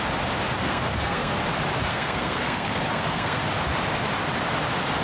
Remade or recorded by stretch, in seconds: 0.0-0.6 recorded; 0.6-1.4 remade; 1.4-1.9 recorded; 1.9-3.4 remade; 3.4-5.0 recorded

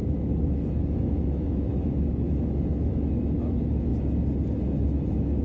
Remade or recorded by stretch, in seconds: 0.0-3.9 remade; 3.9-4.6 recorded; 4.6-5.4 remade